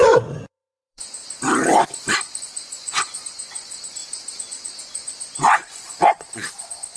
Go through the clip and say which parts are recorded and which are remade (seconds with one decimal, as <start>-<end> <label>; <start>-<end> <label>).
0.0-1.2 remade; 1.2-2.4 recorded; 2.4-7.0 remade

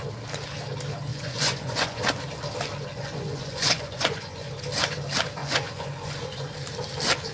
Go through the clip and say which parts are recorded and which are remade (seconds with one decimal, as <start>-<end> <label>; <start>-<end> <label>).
0.0-1.1 recorded; 1.1-2.0 remade; 2.0-2.9 recorded; 2.9-4.5 remade; 4.5-5.4 recorded; 5.4-6.5 remade; 6.5-7.3 recorded

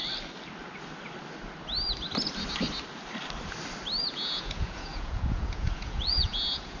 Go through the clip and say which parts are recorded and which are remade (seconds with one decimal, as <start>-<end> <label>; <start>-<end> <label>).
0.0-4.1 recorded; 4.1-6.8 remade

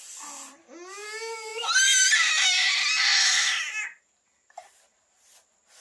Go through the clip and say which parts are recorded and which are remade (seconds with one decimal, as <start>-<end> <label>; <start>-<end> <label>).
0.0-5.8 recorded

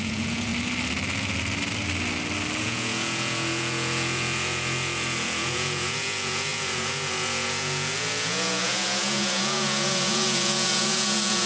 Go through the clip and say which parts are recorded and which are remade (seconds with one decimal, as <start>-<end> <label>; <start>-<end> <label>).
0.0-0.5 remade; 0.5-2.6 recorded; 2.6-11.5 remade